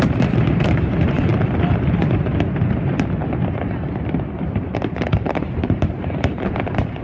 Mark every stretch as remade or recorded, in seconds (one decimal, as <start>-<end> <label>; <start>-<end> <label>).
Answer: 0.0-1.3 remade; 1.3-4.5 recorded; 4.5-7.0 remade